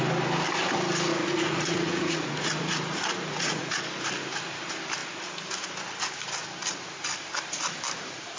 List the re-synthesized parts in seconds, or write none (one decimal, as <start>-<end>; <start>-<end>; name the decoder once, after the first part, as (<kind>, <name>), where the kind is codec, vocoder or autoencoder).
1.1-3.8 (vocoder, Vocos)